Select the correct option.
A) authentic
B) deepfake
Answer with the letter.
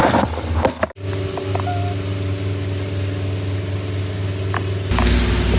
A